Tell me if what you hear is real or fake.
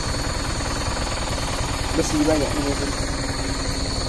real